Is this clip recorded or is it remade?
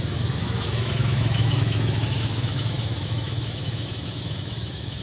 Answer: remade